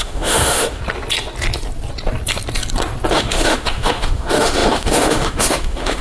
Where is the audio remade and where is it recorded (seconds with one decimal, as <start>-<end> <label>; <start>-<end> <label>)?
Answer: 0.0-0.8 remade; 0.8-3.1 recorded; 3.1-6.0 remade